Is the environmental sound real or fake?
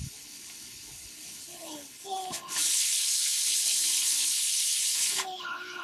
fake